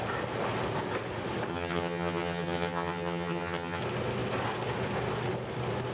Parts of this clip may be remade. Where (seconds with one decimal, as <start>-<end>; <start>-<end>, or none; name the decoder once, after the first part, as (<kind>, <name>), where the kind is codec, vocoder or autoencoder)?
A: 1.5-3.8 (vocoder, HiFi-GAN)

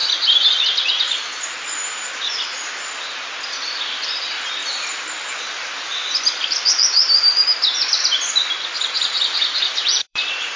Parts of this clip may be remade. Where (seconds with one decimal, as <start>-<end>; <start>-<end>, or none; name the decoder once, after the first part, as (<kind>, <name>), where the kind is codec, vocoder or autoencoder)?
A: 3.8-4.6 (vocoder, BigVGAN v2); 5.4-7.3; 7.9-10.6

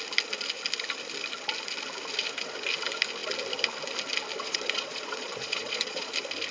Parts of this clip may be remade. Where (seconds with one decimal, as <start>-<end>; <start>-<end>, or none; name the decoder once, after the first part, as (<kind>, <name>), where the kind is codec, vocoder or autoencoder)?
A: 4.4-6.1 (vocoder, Vocos)

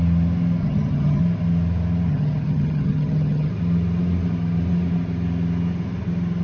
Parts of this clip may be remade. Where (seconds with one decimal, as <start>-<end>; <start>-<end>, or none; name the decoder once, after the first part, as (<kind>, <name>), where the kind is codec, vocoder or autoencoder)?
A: 0.6-1.2 (vocoder, HiFi-GAN); 2.1-3.5

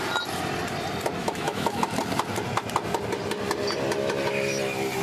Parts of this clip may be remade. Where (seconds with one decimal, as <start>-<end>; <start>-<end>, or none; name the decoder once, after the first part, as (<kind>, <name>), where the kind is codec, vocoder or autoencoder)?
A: 1.2-1.8 (autoencoder, DAC-VAE)

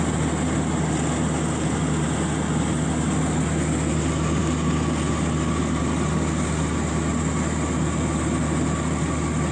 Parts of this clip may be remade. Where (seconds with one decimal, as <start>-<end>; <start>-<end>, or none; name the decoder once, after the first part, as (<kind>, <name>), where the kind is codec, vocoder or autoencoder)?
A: none

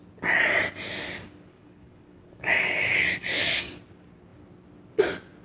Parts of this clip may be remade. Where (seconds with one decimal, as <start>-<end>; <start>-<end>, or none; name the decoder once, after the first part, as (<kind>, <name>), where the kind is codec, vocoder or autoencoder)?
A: 1.5-3.8 (codec, DAC)